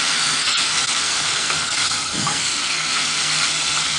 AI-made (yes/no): yes